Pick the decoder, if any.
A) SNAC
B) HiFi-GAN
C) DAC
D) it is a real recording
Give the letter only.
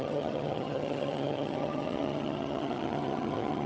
B